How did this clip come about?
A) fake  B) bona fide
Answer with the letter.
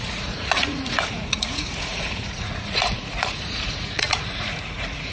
A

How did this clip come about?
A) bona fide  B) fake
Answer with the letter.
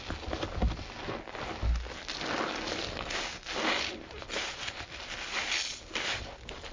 A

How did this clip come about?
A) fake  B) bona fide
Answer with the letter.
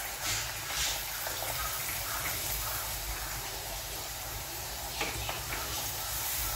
A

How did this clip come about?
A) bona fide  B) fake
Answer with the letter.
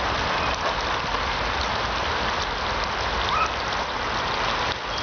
A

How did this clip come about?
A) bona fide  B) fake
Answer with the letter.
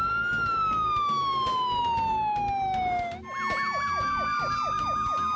A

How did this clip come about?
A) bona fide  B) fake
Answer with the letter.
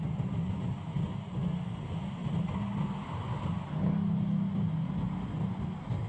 A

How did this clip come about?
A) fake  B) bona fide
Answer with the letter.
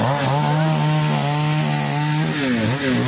B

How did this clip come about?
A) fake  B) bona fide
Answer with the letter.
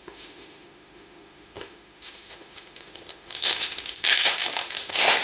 A